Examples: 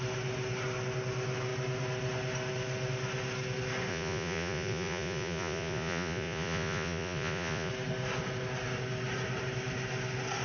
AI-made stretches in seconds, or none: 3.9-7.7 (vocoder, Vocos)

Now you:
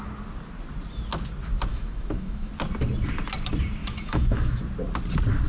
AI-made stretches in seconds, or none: 1.7-2.5 (autoencoder, DAC-VAE); 3.8-4.6